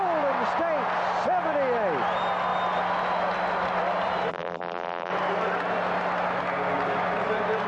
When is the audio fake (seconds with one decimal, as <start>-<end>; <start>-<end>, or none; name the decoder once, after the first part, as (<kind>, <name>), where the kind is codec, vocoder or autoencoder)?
4.3-5.1 (vocoder, BigVGAN v2)